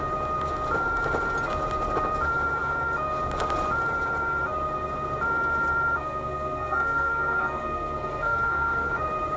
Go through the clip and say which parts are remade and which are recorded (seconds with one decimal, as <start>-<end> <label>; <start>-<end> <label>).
0.0-6.0 recorded; 6.0-8.9 remade; 8.9-9.4 recorded